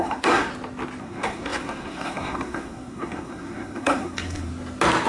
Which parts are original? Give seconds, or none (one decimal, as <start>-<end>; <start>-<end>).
0.5-1.0; 4.5-5.1